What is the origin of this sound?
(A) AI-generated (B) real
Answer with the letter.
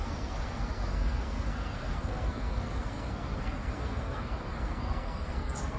A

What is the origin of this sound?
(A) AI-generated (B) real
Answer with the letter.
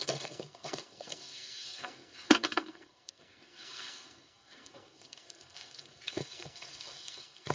A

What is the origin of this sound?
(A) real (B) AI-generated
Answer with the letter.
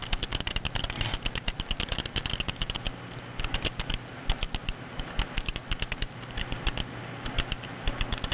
A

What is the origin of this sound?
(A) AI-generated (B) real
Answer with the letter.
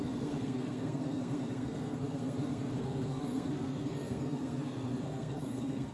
A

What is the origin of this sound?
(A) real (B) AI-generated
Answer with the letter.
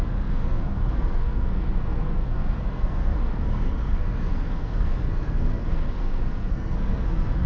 B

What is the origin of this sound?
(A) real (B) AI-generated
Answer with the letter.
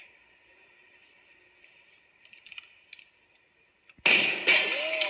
A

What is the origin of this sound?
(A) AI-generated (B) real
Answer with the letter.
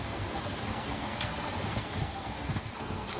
A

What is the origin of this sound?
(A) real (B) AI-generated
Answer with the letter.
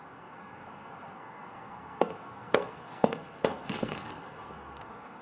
B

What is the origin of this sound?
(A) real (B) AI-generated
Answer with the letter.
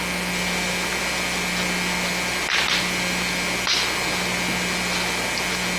A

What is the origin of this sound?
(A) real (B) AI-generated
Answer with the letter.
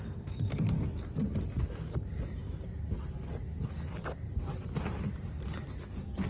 A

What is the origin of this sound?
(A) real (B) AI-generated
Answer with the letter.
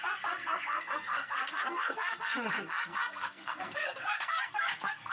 B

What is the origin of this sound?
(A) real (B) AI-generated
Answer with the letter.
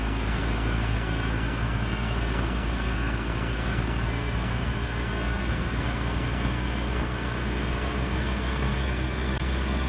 B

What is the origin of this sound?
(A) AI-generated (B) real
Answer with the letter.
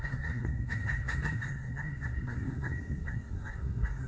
A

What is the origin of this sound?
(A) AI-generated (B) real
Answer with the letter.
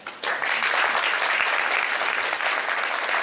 B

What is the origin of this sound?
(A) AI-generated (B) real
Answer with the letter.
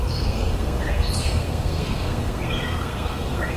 A